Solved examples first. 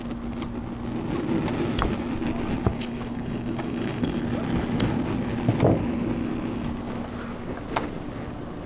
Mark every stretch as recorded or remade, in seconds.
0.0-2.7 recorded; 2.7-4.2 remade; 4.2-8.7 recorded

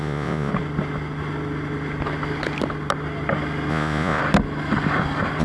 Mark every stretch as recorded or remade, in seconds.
0.0-0.5 remade; 0.5-3.7 recorded; 3.7-4.2 remade; 4.2-5.4 recorded

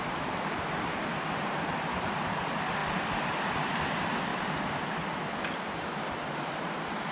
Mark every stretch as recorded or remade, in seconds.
0.0-7.1 recorded

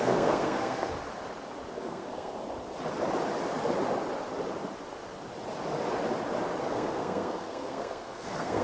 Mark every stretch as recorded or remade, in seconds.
0.0-0.9 remade; 0.9-1.7 recorded; 1.7-2.3 remade; 2.3-6.6 recorded; 6.6-8.6 remade

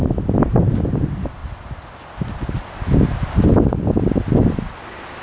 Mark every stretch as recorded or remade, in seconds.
0.0-5.2 recorded

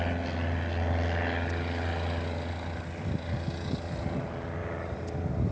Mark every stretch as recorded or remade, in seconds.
0.0-5.5 recorded